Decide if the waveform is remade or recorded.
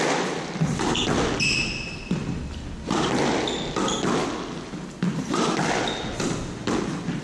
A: recorded